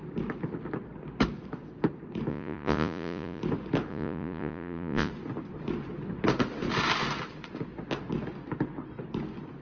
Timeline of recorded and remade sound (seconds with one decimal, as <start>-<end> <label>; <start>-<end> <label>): 0.0-2.3 recorded; 2.3-3.4 remade; 3.4-3.9 recorded; 3.9-5.1 remade; 5.1-9.6 recorded